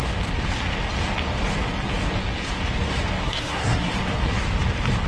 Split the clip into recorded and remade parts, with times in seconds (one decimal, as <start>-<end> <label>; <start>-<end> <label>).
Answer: 0.0-3.2 recorded; 3.2-3.9 remade; 3.9-5.1 recorded